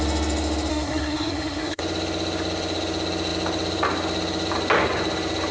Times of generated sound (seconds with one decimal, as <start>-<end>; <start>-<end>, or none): 0.7-1.8